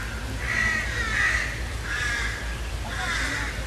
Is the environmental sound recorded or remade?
recorded